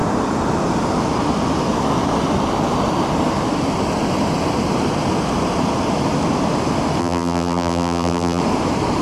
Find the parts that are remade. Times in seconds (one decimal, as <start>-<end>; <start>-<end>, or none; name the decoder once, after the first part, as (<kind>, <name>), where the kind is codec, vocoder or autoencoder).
7.0-8.4 (vocoder, BigVGAN v2)